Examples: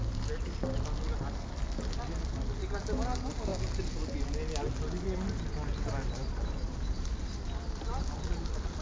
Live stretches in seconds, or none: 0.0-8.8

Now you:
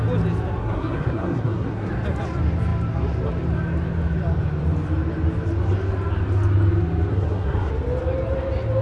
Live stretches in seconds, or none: 0.0-0.6; 1.9-7.1; 7.7-8.8

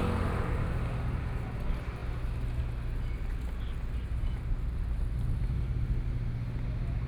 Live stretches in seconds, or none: 0.0-7.1

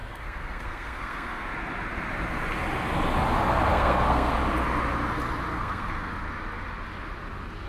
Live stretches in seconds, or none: 1.5-3.7; 4.3-5.5; 6.1-7.7

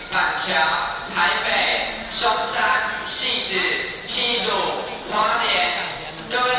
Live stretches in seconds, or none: 0.0-6.6

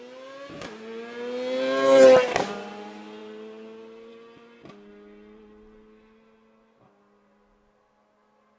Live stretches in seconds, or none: 0.0-8.6

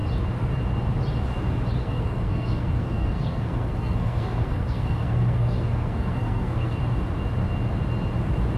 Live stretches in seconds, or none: 0.0-1.8; 6.8-8.6